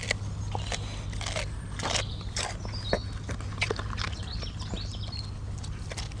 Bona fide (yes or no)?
yes